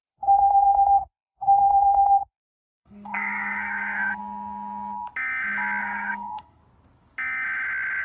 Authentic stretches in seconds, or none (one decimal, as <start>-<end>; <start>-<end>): 4.2-5.8; 6.6-8.0